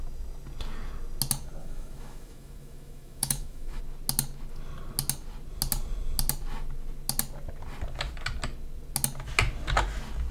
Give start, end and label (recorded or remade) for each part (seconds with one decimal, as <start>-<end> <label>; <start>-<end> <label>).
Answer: 0.0-1.6 recorded; 1.6-3.8 remade; 3.8-10.3 recorded